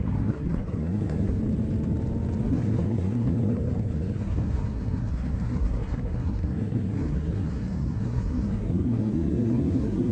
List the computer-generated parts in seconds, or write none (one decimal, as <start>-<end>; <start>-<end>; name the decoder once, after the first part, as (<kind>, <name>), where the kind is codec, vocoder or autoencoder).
0.0-1.4 (codec, SNAC); 2.4-10.1